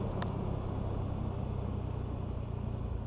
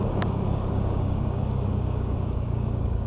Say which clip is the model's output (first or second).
second